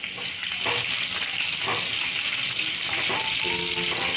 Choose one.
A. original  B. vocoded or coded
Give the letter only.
A